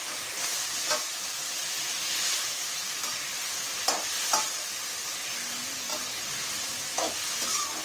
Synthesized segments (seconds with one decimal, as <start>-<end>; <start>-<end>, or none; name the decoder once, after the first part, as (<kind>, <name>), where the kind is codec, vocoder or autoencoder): none